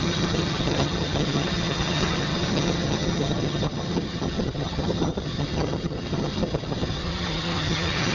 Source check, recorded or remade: remade